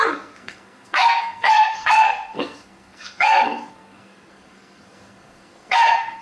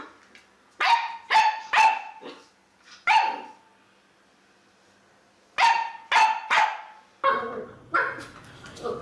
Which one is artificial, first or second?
first